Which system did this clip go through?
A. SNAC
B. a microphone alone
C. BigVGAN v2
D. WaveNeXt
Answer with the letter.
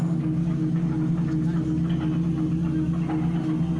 B